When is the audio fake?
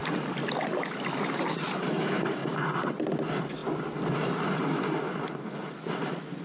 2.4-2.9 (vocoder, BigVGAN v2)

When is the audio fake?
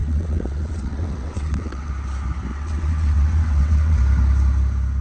0.0-1.9 (vocoder, WaveNeXt); 2.5-4.0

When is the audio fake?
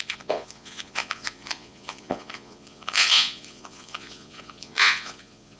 0.0-5.6 (vocoder, Vocos)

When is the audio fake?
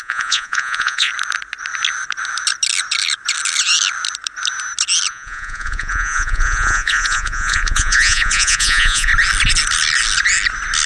0.0-1.1 (vocoder, Vocos); 5.1-9.1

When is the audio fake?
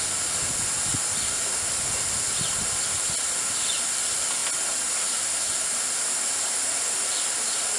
none